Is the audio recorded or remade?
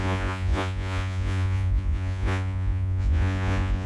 remade